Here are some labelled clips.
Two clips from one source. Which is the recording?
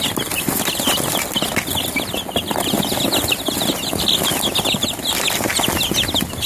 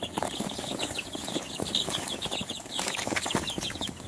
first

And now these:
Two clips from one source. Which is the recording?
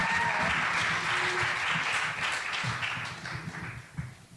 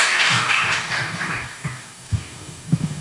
first